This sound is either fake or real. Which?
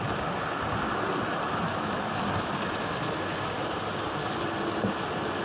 real